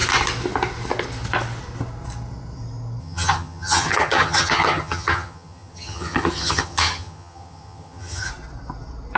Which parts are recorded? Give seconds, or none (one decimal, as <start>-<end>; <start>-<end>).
0.0-3.0; 8.3-9.2